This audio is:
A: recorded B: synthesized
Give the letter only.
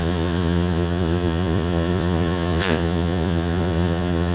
B